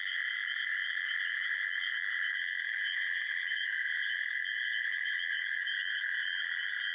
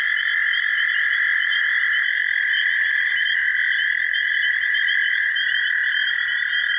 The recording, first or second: second